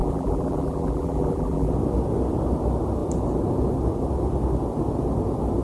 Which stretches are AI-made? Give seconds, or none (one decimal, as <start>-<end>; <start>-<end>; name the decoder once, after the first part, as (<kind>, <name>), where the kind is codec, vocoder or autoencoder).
0.0-1.7 (vocoder, BigVGAN v2)